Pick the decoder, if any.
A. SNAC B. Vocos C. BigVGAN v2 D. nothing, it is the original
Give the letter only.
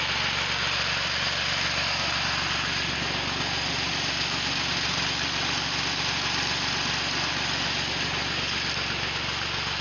D